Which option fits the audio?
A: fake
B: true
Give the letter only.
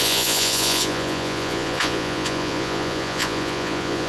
A